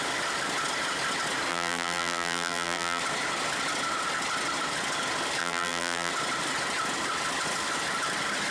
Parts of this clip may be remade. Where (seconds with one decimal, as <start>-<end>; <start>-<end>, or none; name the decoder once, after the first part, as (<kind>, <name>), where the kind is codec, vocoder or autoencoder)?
1.5-3.0 (vocoder, BigVGAN v2); 5.4-6.1